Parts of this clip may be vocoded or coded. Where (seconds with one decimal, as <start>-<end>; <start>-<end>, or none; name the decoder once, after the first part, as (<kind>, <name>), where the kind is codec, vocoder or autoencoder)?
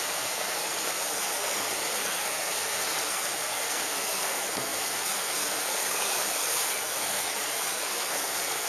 0.0-8.7 (codec, SNAC)